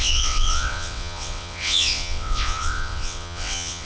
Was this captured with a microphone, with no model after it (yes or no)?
no